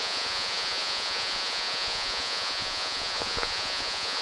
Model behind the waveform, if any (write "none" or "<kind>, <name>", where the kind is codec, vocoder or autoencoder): vocoder, Vocos